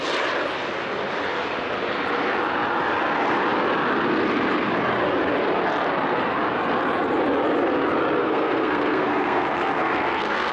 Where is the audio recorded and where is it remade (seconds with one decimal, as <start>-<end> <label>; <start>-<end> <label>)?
0.0-8.2 recorded; 8.2-10.5 remade